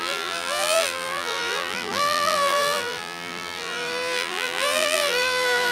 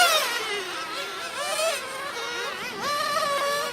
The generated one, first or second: first